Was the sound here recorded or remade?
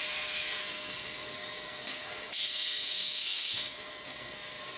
remade